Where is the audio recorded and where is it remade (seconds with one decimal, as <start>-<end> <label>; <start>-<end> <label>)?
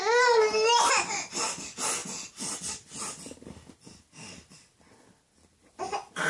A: 0.0-6.3 recorded